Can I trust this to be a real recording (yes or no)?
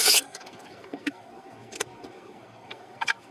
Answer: no